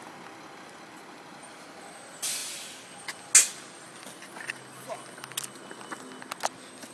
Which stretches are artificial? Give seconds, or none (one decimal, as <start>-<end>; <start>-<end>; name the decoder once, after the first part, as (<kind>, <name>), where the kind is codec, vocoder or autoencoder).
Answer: none